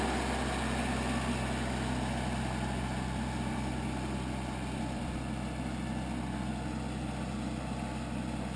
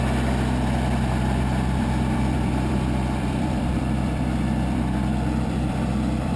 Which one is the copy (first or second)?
second